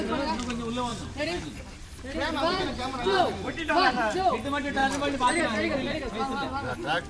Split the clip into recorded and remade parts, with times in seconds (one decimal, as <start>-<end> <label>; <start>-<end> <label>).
0.0-0.9 recorded; 0.9-3.7 remade; 3.7-4.8 recorded; 4.8-5.4 remade; 5.4-7.1 recorded